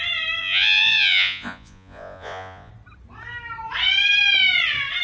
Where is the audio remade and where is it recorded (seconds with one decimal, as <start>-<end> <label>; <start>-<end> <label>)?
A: 0.0-0.4 recorded; 0.4-2.7 remade; 2.7-5.0 recorded